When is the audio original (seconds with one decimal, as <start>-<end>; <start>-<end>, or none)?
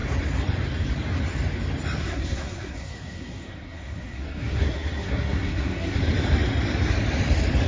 0.0-2.0; 6.0-7.7